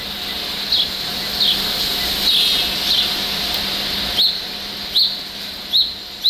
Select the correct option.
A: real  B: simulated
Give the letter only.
A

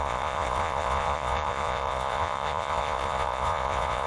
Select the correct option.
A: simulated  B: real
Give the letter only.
A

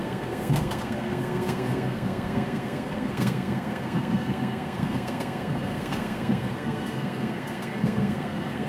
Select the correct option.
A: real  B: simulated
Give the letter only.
B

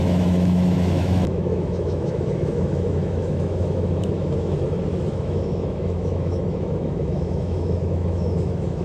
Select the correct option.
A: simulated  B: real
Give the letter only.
A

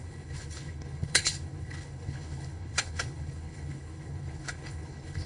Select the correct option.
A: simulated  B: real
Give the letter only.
A